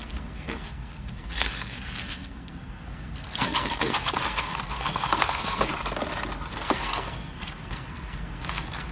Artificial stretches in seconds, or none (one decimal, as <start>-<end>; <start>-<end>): 0.0-5.7; 6.5-8.9